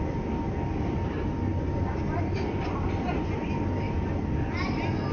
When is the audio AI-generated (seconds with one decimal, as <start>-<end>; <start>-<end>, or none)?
none